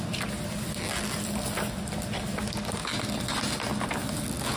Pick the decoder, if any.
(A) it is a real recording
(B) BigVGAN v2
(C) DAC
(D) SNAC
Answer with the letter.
A